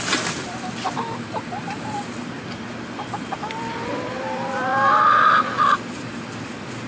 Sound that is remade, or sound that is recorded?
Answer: remade